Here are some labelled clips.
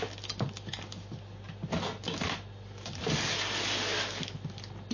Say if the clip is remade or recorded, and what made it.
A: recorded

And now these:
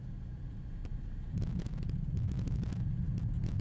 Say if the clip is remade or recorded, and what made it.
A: recorded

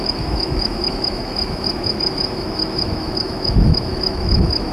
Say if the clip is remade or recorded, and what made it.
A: remade, autoencoder, DAC-VAE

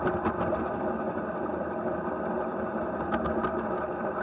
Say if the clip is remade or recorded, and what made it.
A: recorded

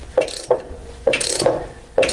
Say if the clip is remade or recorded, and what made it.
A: remade, vocoder, Vocos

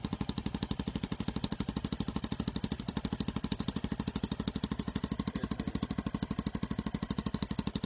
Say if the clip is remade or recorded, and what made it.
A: remade, vocoder, BigVGAN v2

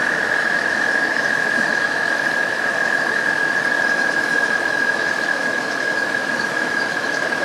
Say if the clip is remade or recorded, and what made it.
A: remade, autoencoder, DAC-VAE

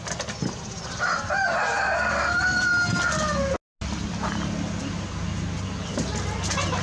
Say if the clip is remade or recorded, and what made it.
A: recorded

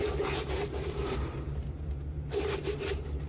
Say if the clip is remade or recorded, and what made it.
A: remade, vocoder, BigVGAN v2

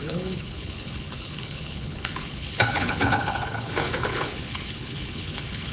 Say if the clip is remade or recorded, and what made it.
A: remade, codec, HILCodec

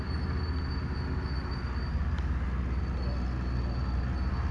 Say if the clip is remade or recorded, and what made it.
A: recorded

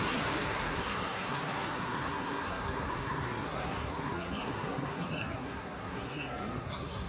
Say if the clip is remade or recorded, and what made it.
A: remade, codec, SNAC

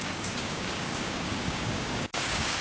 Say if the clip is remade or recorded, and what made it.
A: remade, codec, DAC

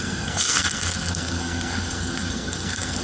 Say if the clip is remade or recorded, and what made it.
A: remade, codec, SNAC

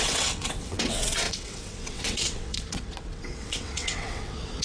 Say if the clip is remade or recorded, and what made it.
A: remade, vocoder, WaveNeXt